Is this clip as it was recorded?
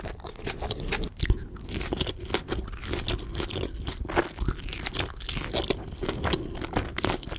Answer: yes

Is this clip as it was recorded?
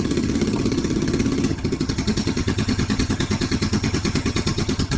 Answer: no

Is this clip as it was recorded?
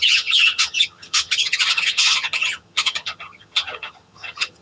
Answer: no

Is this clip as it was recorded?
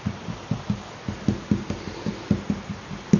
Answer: yes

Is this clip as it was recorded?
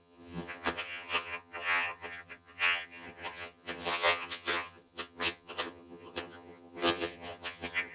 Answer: no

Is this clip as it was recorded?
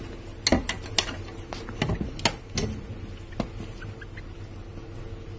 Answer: yes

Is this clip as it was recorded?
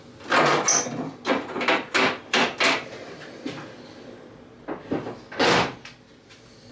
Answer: yes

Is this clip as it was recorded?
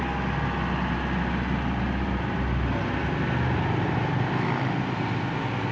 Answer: yes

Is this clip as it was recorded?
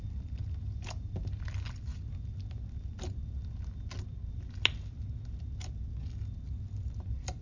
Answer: yes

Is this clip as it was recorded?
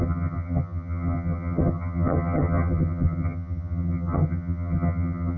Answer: no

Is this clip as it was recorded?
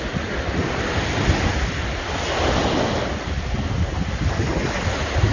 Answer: yes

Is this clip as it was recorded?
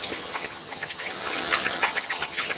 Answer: no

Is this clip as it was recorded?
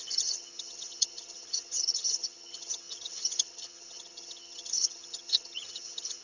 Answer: no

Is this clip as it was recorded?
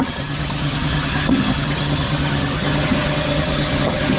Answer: no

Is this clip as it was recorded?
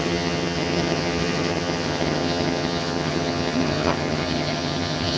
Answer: no